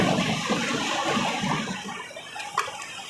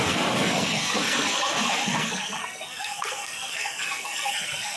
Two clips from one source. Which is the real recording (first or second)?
first